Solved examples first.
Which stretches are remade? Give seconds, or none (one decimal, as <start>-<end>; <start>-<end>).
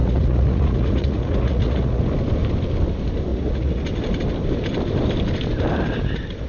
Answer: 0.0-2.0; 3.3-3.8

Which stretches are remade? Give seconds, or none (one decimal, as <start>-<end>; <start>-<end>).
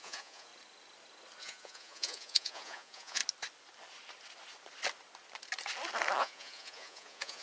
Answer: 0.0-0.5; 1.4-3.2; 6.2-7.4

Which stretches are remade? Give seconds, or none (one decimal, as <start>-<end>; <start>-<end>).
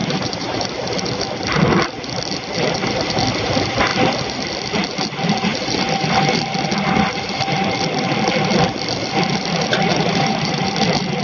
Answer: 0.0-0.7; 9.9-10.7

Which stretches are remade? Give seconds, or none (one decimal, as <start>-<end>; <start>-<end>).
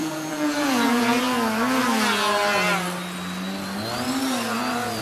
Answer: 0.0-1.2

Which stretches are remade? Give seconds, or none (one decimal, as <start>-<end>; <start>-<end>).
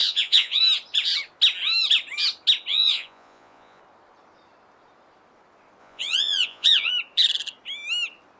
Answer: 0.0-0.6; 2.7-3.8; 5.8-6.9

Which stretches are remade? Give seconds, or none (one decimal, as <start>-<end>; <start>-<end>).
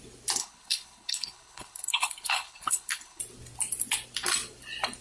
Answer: 0.4-3.2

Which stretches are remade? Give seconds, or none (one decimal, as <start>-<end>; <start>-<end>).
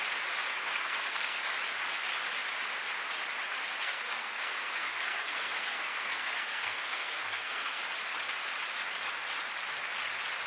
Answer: 0.5-1.4; 3.8-7.8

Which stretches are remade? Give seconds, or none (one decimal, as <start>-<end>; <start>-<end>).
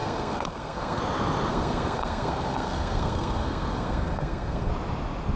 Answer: 0.0-1.0; 1.5-4.7